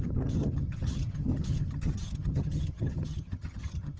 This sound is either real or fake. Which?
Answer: fake